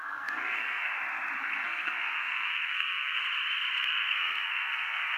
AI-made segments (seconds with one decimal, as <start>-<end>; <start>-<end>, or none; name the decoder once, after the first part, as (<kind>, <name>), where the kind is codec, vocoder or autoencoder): 0.0-0.9 (codec, SNAC); 1.4-3.2; 3.8-5.2